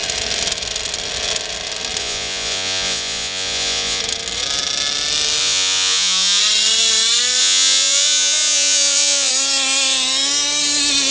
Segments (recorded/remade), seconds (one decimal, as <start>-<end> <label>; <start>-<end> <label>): 0.0-2.0 recorded; 2.0-4.0 remade; 4.0-5.4 recorded; 5.4-6.4 remade; 6.4-7.4 recorded; 7.4-9.3 remade; 9.3-11.1 recorded